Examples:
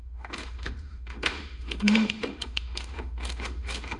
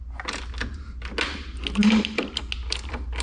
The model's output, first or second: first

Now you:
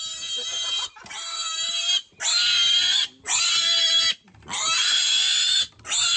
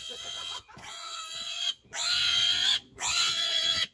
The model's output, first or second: second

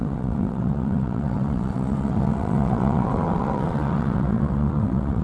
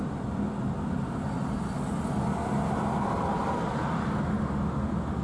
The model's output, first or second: first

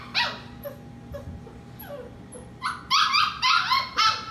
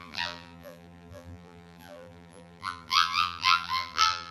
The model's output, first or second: second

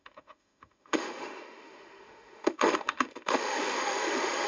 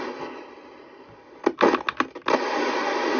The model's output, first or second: first